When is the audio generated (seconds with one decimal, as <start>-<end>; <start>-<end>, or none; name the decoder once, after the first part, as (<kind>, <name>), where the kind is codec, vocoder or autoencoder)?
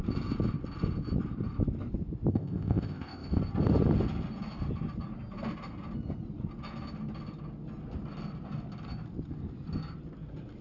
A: 2.3-3.4 (codec, ZipCodec)